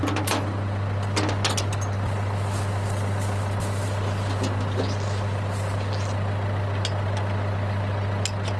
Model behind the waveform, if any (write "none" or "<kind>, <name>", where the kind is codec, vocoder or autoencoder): none